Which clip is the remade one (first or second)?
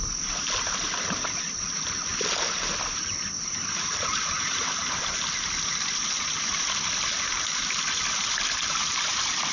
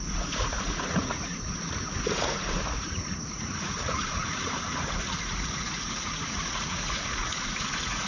second